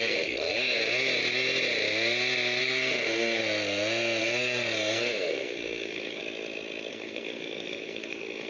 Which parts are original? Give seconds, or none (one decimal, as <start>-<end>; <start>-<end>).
0.8-2.6; 3.4-4.2; 6.2-6.9